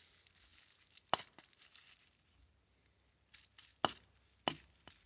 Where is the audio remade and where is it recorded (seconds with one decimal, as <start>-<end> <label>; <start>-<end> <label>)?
0.0-5.1 recorded